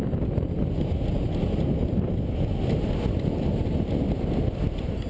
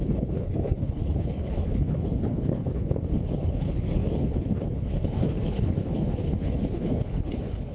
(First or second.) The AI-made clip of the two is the second